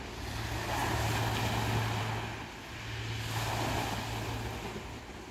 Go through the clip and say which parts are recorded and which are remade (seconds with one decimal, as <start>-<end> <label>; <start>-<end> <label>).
0.0-5.3 recorded